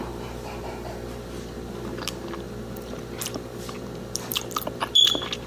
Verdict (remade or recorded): recorded